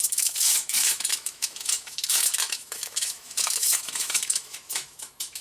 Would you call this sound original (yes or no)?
no